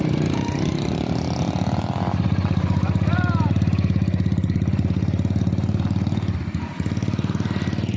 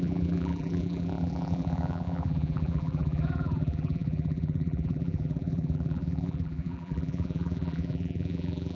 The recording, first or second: first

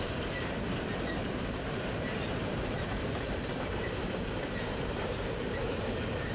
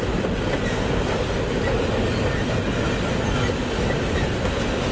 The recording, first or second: second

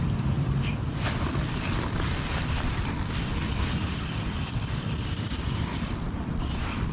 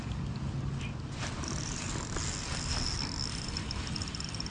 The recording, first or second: second